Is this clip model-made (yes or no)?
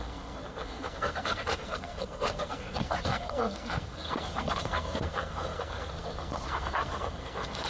yes